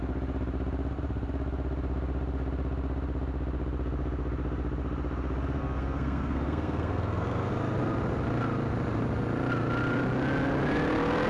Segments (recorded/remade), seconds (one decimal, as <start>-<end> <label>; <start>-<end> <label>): 0.0-5.6 recorded; 5.6-7.5 remade; 7.5-11.3 recorded